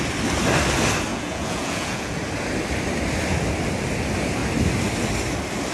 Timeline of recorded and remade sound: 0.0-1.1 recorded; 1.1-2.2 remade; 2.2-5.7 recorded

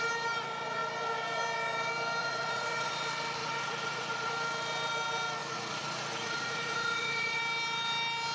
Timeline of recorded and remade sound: 0.0-2.2 recorded; 2.2-2.9 remade; 2.9-3.4 recorded; 3.4-4.3 remade; 4.3-5.4 recorded; 5.4-7.4 remade; 7.4-8.3 recorded

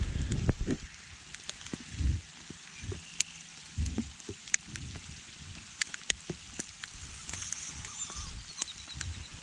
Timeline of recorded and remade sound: 0.0-3.5 recorded; 3.5-4.5 remade; 4.5-5.0 recorded; 5.0-6.0 remade; 6.0-7.2 recorded; 7.2-8.0 remade; 8.0-9.4 recorded

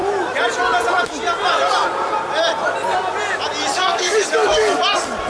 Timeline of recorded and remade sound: 0.0-3.8 recorded; 3.8-4.8 remade; 4.8-5.3 recorded